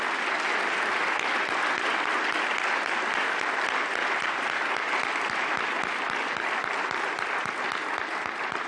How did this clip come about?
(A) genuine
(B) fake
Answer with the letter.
A